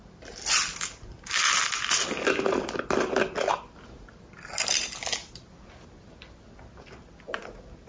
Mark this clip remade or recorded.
recorded